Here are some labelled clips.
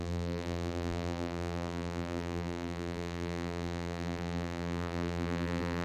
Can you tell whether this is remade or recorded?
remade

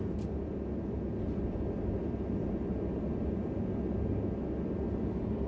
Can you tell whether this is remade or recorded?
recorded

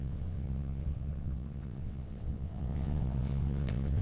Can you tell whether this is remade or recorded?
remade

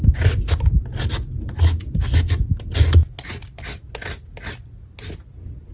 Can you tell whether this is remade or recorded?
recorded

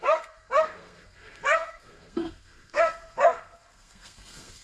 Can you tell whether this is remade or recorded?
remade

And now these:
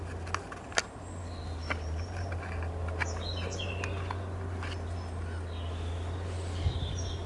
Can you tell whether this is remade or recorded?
recorded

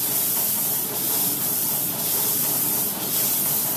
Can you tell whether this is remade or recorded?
recorded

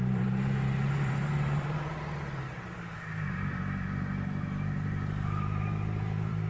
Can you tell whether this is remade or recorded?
remade